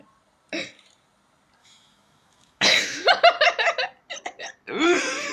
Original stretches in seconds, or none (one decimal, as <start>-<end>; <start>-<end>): 0.0-1.6; 3.1-5.3